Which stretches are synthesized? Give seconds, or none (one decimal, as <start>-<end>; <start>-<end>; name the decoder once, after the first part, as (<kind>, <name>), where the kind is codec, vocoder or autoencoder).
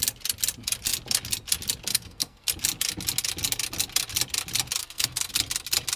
1.9-2.5 (codec, SNAC); 4.8-5.3